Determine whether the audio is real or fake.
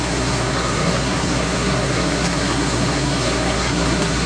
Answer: fake